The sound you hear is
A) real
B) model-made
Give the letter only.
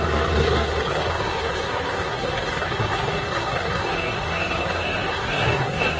B